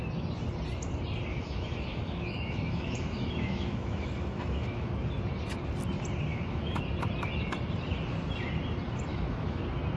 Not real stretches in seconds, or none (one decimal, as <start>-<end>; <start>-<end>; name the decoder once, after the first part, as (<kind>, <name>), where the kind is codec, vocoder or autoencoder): 1.3-4.9 (autoencoder, DAC-VAE); 6.3-6.8; 9.1-9.6